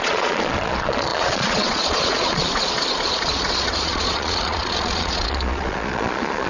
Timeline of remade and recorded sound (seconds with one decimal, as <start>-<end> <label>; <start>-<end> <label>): 0.0-6.5 remade